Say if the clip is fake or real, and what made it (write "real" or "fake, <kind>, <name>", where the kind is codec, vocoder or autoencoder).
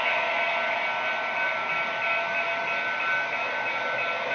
real